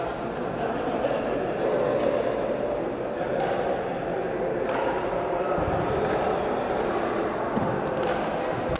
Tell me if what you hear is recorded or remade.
recorded